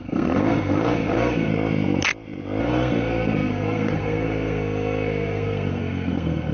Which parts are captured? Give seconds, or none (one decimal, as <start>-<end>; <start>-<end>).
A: 1.5-2.6